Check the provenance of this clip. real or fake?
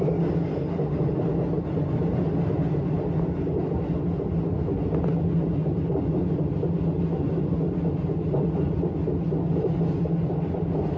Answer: real